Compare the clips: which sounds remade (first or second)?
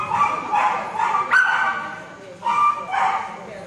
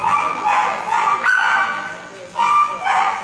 second